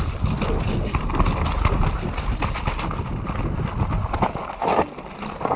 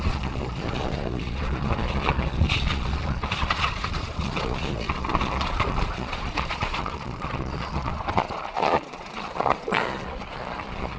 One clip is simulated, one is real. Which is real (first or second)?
first